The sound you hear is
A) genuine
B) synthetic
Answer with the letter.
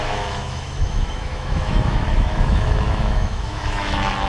B